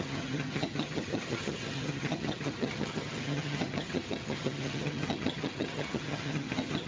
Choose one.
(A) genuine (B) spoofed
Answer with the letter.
B